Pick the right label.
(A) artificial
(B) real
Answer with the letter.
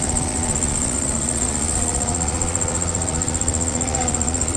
A